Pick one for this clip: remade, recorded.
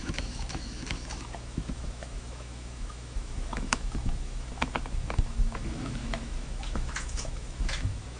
remade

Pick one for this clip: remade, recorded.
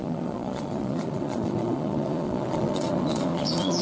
remade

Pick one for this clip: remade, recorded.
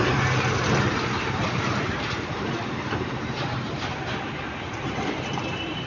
remade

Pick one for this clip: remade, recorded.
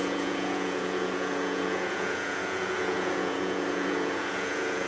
remade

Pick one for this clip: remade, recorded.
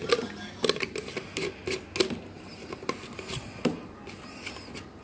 recorded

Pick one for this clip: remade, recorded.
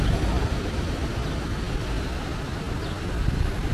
recorded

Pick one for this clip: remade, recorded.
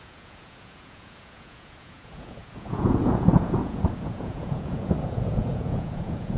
remade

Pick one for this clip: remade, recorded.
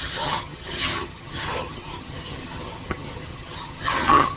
remade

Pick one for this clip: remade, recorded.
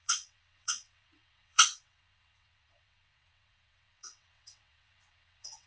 remade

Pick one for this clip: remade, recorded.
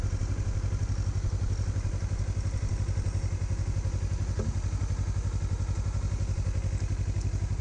recorded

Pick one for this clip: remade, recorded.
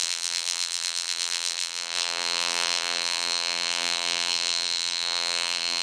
remade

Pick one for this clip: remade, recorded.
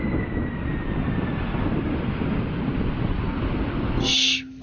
recorded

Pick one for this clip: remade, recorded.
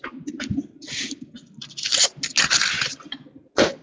recorded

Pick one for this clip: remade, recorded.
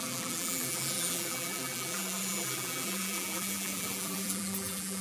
remade